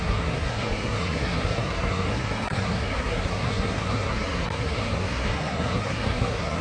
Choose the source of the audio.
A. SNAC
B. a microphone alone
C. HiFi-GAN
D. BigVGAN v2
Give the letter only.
A